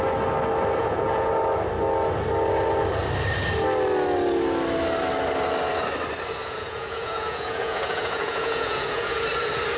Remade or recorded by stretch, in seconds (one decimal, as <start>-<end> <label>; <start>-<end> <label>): 0.0-0.8 recorded; 0.8-1.3 remade; 1.3-6.4 recorded; 6.4-9.2 remade; 9.2-9.8 recorded